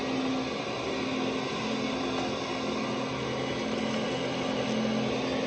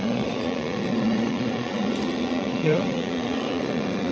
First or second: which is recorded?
first